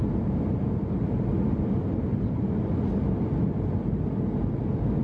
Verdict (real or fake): real